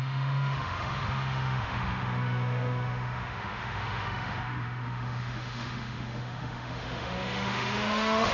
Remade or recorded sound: remade